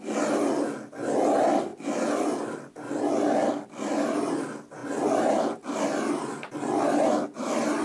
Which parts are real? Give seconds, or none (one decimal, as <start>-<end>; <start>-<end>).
0.0-7.8